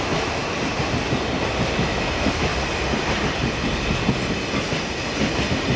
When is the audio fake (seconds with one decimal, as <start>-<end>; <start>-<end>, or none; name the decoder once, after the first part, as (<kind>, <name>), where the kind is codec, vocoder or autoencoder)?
0.0-0.4 (autoencoder, DAC-VAE); 1.8-2.5